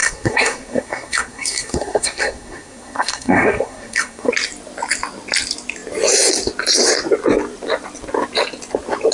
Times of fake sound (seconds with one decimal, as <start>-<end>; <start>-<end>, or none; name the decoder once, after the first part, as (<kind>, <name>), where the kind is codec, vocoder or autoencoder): 0.0-4.3 (codec, SNAC)